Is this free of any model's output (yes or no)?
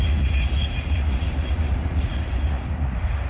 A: no